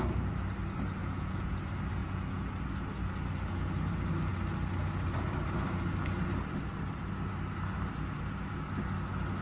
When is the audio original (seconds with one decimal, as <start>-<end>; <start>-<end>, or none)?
0.0-1.0; 1.6-2.0; 2.5-9.4